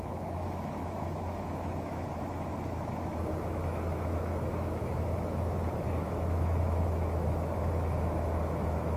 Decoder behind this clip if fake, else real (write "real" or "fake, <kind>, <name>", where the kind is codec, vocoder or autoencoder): fake, autoencoder, DAC-VAE